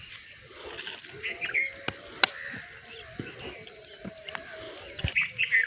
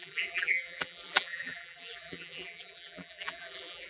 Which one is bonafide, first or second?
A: first